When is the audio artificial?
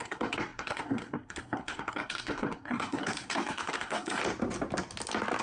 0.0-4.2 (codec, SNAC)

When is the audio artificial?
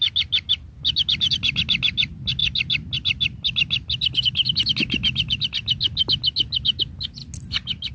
none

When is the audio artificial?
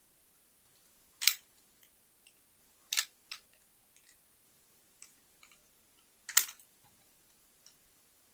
0.0-5.6 (vocoder, BigVGAN v2); 6.7-8.3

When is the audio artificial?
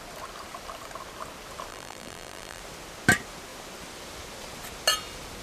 1.7-2.6 (vocoder, BigVGAN v2)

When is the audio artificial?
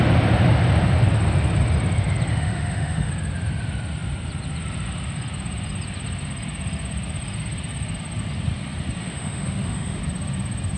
2.3-3.1 (autoencoder, DAC-VAE); 9.0-10.0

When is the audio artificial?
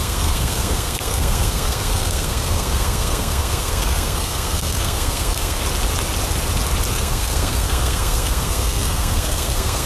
0.0-5.6 (codec, SNAC); 6.9-9.9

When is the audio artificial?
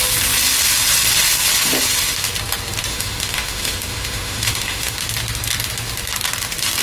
2.9-5.0 (autoencoder, DAC-VAE)